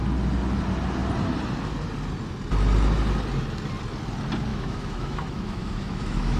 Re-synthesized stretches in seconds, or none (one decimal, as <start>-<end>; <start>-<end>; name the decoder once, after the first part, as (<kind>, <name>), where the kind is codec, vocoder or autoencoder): 4.5-6.4 (autoencoder, DAC-VAE)